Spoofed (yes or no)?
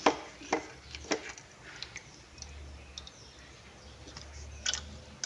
no